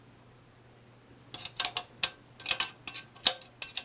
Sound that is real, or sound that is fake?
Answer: real